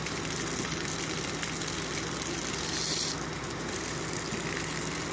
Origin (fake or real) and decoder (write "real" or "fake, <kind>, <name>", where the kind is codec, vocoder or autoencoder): real